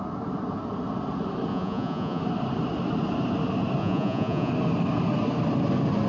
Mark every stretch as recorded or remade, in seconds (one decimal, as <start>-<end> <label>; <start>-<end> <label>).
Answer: 0.0-1.5 recorded; 1.5-2.2 remade; 2.2-3.8 recorded; 3.8-4.5 remade; 4.5-6.1 recorded